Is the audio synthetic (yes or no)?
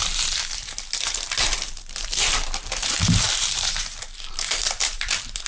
yes